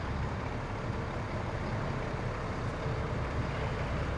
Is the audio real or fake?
fake